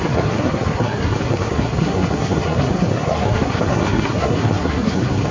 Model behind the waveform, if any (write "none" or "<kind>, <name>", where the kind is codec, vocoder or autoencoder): codec, SNAC